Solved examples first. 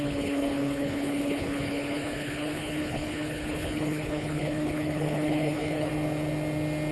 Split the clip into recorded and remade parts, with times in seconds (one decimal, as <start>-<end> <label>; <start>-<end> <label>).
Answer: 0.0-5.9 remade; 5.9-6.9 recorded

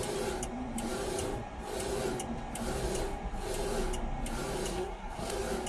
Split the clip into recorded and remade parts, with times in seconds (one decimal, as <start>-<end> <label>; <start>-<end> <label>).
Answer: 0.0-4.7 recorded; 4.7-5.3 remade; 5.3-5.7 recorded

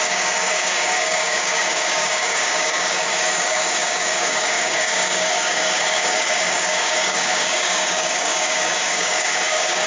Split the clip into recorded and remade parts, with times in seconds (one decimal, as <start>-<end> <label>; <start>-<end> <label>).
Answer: 0.0-9.9 remade

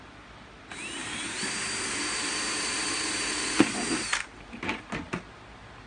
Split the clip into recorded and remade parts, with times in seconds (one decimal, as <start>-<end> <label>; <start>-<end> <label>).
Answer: 0.0-1.0 recorded; 1.0-4.5 remade; 4.5-5.9 recorded